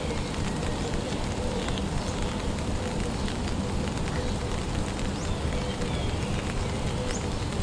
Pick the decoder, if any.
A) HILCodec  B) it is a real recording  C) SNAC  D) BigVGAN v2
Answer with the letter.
B